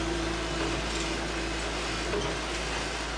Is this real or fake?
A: real